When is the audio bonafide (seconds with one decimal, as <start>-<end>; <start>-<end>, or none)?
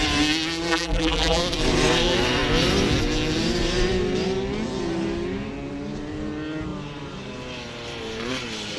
0.0-0.7; 1.4-8.8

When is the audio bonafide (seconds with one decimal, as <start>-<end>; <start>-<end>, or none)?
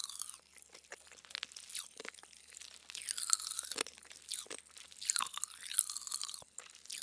0.0-7.0